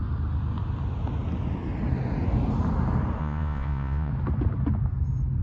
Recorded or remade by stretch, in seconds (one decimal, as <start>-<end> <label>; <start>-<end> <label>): 0.0-3.2 recorded; 3.2-4.1 remade; 4.1-5.4 recorded